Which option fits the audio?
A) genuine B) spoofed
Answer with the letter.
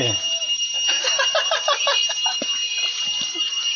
A